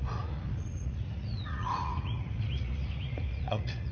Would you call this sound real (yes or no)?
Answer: no